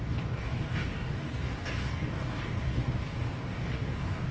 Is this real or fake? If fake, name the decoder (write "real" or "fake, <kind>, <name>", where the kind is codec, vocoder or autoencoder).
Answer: fake, codec, DAC